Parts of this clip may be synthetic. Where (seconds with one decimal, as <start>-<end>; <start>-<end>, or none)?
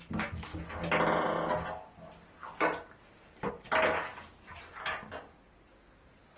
none